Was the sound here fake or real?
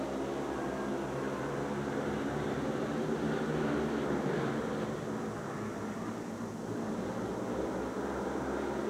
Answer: real